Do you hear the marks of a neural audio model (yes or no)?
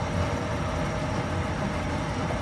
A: no